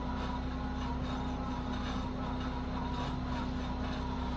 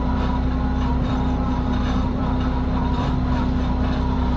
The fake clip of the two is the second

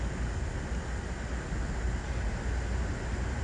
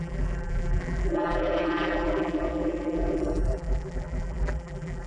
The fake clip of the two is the second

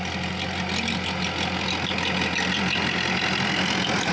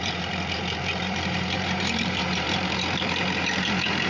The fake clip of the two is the second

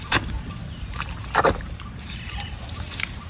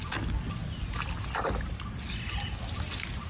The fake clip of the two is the first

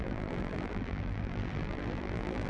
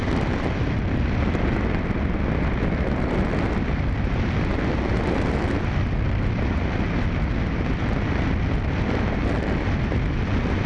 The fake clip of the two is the first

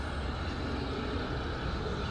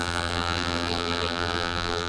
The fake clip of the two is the second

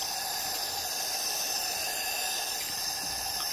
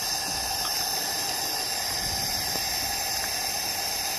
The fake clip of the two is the first